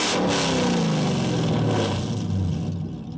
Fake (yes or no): no